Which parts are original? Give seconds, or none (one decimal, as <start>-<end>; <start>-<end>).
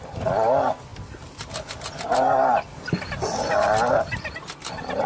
0.0-5.1